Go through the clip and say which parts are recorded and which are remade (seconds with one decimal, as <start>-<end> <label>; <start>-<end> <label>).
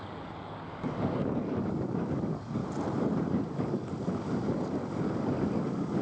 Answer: 0.0-2.6 remade; 2.6-3.3 recorded; 3.3-6.0 remade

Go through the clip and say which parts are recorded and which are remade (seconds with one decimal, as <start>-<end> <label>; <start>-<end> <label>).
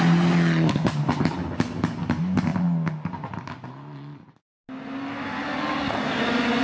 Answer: 0.0-6.6 recorded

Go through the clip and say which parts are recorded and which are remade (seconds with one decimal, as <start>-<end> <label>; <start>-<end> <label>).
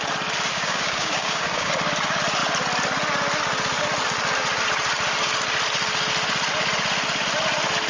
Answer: 0.0-0.5 recorded; 0.5-1.7 remade; 1.7-7.9 recorded